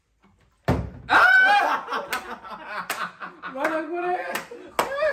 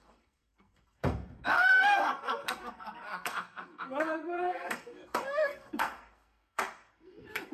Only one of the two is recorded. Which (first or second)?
first